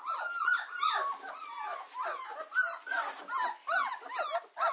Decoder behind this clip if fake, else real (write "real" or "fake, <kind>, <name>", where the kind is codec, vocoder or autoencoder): real